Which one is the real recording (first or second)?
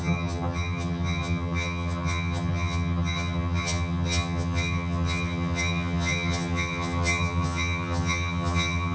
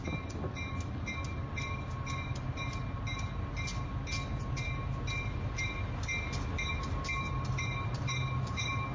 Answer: second